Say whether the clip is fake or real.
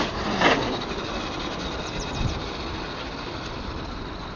fake